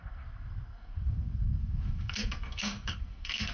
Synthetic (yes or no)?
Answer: yes